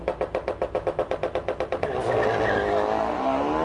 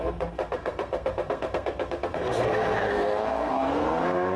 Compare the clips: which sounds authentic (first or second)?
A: first